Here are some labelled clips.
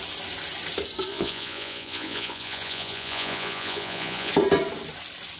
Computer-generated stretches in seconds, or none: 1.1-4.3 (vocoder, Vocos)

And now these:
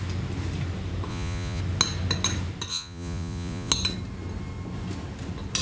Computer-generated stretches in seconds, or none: 1.1-1.6 (vocoder, Vocos); 2.7-3.7